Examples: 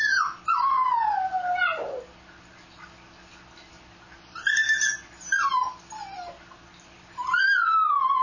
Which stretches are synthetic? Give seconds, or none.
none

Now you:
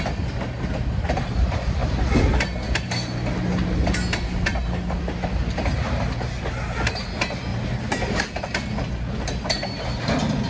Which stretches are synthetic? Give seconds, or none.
7.5-8.9 (vocoder, BigVGAN v2)